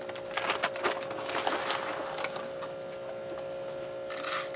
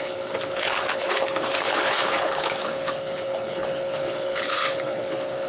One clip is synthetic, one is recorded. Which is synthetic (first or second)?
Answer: second